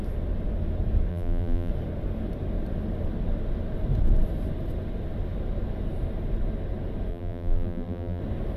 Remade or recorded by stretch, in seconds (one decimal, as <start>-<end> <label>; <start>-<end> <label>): 0.0-1.1 recorded; 1.1-1.7 remade; 1.7-7.1 recorded; 7.1-8.2 remade; 8.2-8.6 recorded